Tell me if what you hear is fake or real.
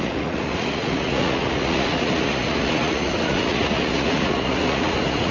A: fake